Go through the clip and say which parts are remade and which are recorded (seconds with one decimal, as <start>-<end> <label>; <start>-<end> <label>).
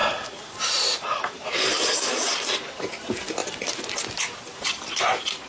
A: 0.0-5.5 recorded